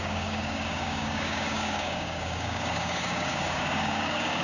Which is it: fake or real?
fake